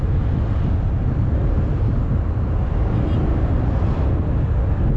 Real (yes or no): yes